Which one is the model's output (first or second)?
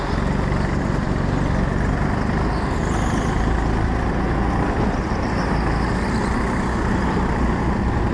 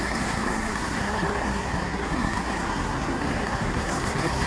second